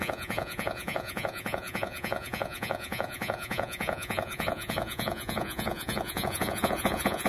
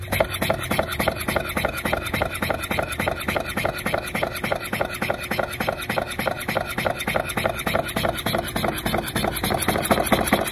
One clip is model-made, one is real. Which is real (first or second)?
second